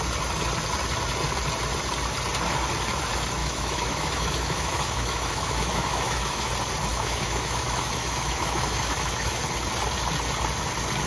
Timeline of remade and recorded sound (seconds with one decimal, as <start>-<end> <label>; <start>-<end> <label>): 0.0-3.4 recorded; 3.4-6.5 remade; 6.5-6.9 recorded; 6.9-9.4 remade; 9.4-11.1 recorded